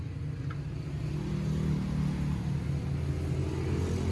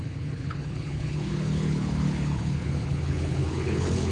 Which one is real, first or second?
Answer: first